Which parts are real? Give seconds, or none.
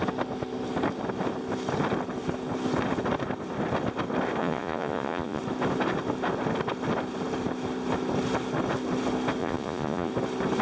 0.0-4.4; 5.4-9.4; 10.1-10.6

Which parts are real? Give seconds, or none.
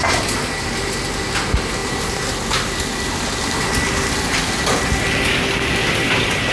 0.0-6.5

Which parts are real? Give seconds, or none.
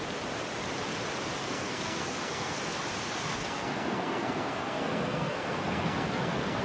0.0-1.4; 2.6-3.3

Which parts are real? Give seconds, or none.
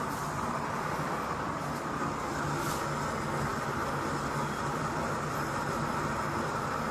0.0-6.9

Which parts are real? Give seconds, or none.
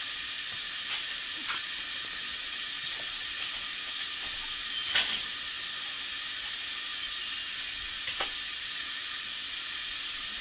0.0-10.4